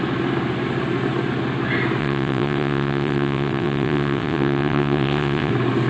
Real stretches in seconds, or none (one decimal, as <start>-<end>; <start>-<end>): 0.0-2.0; 5.5-5.9